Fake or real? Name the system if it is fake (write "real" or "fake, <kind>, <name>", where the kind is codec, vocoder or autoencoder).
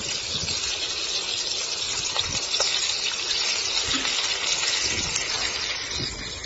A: real